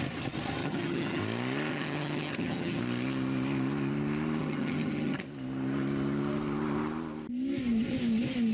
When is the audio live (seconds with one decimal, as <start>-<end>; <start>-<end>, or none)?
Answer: 0.0-0.6; 1.2-1.7; 2.8-4.4; 5.2-8.5